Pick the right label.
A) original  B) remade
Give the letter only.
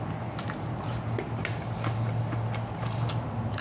A